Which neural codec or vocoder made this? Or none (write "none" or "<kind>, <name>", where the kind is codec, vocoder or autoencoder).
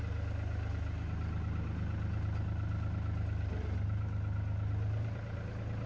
none